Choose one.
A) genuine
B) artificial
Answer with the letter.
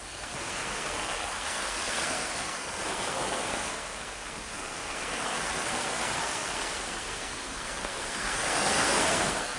B